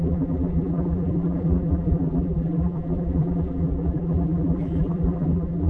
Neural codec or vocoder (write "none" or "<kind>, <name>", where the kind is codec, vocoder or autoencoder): vocoder, BigVGAN v2